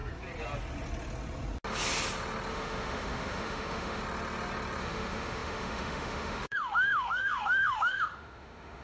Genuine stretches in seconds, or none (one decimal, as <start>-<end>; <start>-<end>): 0.0-2.5; 4.0-4.8